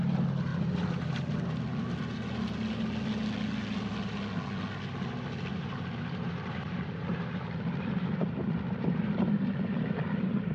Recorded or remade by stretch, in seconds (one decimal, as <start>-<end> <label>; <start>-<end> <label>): 0.0-0.5 recorded; 0.5-1.3 remade; 1.3-5.5 recorded; 5.5-10.5 remade